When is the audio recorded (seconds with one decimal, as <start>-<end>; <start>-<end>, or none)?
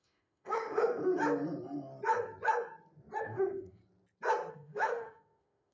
1.0-3.2; 3.8-4.5